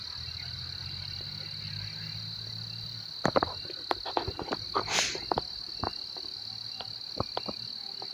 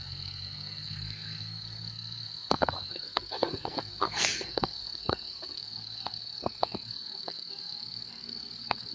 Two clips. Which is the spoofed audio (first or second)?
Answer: second